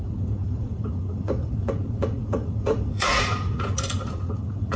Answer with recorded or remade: remade